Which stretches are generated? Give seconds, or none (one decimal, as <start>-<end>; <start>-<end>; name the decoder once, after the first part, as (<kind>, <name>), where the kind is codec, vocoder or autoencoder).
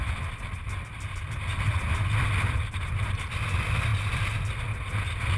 none